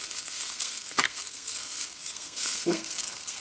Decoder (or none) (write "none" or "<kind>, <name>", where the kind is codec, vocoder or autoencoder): codec, SNAC